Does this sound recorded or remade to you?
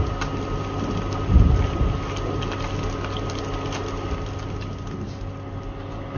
recorded